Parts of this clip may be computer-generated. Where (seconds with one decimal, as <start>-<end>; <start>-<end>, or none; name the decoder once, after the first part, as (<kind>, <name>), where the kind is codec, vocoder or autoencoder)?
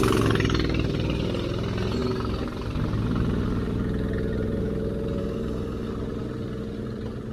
5.2-5.9 (codec, DAC)